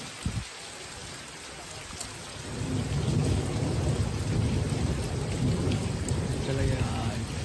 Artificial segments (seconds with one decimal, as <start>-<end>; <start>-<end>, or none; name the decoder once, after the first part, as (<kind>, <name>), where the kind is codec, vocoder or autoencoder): none